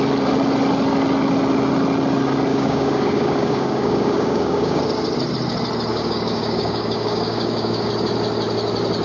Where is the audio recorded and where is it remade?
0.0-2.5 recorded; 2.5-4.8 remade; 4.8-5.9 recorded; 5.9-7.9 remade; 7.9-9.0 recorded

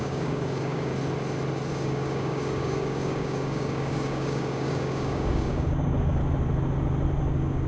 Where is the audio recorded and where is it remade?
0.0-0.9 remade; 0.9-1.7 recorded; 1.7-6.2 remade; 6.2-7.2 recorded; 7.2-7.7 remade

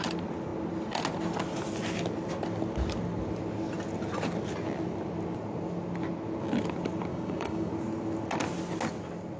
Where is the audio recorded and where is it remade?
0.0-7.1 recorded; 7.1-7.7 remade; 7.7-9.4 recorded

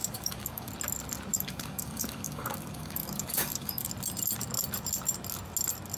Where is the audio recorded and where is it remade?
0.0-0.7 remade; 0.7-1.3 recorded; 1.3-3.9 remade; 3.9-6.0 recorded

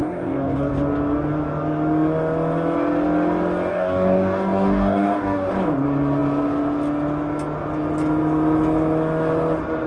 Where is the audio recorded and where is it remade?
0.0-0.7 remade; 0.7-3.7 recorded; 3.7-5.5 remade; 5.5-9.9 recorded

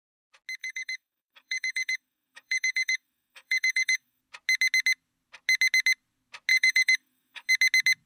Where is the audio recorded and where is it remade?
0.0-0.6 recorded; 0.6-4.2 remade; 4.2-6.5 recorded; 6.5-7.5 remade; 7.5-8.1 recorded